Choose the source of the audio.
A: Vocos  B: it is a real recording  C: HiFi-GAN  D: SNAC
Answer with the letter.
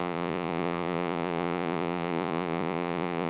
A